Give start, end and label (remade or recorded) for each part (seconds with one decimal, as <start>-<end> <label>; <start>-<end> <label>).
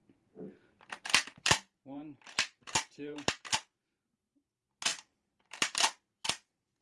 0.0-4.1 remade; 4.1-4.9 recorded; 4.9-6.8 remade